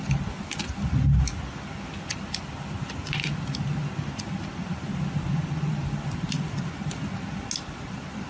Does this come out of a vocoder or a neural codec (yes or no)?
no